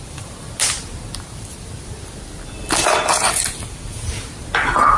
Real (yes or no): yes